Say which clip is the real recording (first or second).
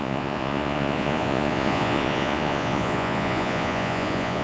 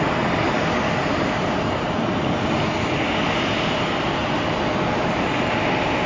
second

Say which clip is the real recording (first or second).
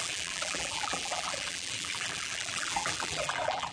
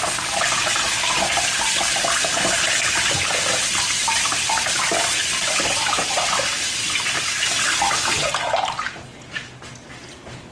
second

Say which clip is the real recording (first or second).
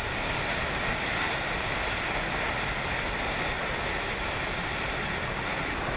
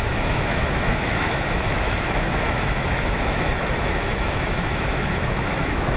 first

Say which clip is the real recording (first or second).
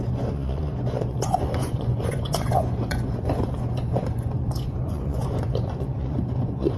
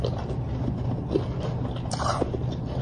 second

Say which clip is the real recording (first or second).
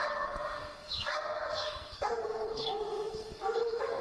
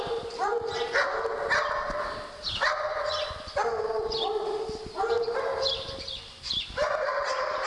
second